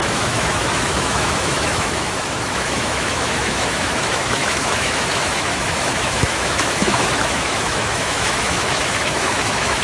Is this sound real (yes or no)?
no